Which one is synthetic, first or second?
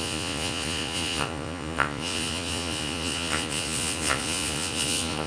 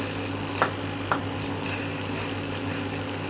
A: first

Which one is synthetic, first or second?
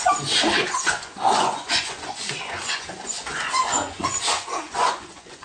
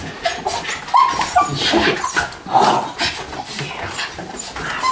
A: first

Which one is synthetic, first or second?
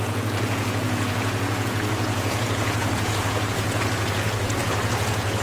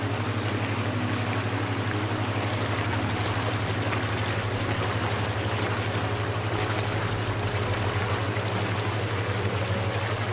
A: first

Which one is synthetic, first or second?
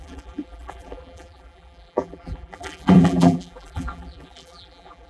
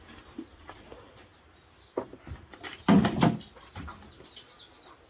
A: first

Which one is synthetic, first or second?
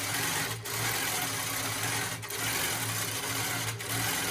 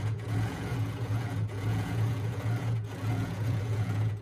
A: second